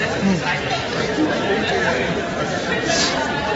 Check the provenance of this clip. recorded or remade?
remade